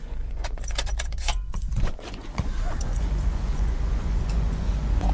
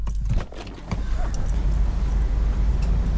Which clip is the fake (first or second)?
first